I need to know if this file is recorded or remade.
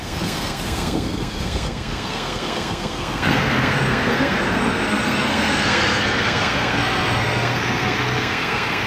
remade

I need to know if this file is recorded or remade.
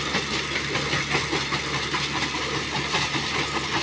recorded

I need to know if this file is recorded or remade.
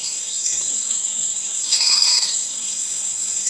remade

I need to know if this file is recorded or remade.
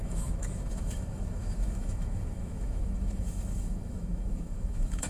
remade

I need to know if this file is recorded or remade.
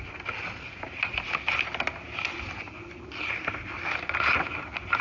recorded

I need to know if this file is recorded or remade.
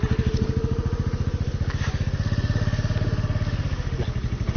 recorded